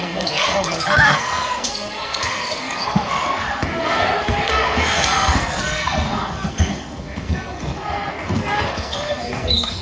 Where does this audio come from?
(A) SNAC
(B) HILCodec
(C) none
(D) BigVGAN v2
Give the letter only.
A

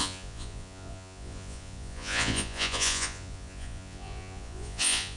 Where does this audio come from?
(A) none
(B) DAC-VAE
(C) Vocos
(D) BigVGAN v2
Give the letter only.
C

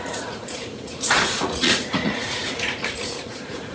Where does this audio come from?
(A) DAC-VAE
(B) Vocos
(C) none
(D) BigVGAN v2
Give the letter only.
B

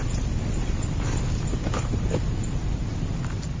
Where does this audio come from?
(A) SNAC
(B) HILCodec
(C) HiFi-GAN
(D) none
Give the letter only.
D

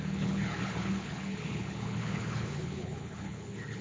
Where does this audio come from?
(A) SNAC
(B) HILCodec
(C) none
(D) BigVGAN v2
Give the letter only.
B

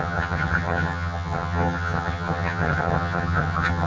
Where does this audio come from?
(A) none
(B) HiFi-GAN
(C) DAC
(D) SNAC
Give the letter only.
B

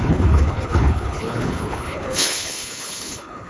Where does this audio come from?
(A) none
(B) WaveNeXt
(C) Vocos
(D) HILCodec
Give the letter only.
D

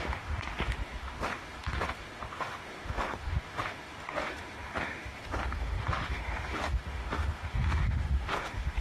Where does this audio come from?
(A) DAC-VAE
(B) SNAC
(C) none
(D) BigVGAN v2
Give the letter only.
A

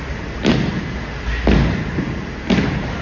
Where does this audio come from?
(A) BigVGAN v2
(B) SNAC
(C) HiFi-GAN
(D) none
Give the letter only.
D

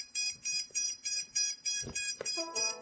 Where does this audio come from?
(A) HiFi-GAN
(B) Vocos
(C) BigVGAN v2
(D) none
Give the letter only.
C